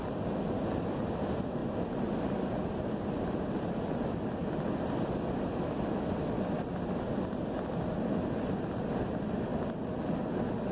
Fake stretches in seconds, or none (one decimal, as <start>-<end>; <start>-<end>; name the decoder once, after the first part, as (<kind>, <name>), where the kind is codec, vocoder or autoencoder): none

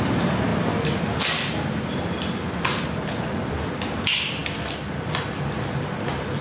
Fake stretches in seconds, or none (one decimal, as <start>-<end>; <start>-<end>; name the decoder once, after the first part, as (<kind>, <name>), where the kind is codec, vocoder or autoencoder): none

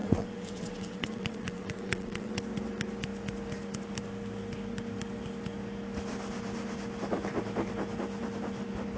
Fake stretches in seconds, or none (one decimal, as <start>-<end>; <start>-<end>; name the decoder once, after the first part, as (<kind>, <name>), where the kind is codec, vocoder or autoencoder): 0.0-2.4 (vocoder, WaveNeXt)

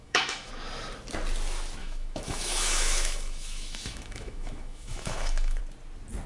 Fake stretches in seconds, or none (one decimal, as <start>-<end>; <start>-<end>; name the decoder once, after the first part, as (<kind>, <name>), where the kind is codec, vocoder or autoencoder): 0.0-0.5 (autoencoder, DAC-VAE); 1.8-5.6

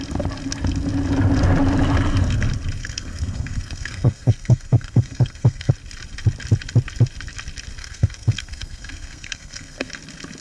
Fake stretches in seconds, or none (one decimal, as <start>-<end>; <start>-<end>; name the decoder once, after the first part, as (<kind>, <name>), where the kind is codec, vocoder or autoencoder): 2.8-5.7 (codec, SNAC); 7.8-9.9